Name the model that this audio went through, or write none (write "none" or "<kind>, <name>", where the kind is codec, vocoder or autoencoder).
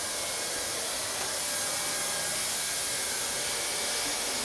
none